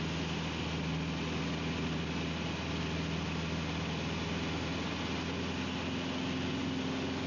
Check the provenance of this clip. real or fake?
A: real